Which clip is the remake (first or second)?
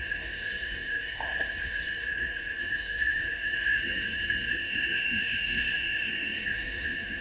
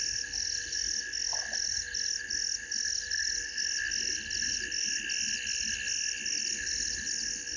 first